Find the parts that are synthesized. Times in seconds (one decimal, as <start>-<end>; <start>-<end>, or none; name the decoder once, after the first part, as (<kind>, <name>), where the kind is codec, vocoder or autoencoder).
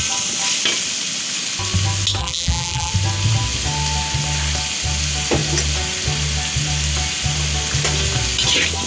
2.2-2.9 (vocoder, BigVGAN v2)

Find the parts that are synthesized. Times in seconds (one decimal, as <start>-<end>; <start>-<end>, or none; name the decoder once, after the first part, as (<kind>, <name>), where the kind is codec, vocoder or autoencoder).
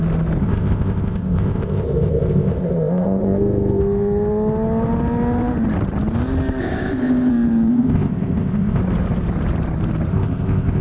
0.4-3.8 (codec, ZipCodec); 6.6-7.3; 7.7-8.8; 10.1-10.8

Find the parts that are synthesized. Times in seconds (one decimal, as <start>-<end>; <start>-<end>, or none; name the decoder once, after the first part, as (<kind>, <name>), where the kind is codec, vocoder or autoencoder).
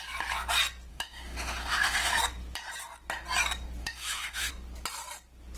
0.9-2.2 (autoencoder, DAC-VAE); 3.8-4.5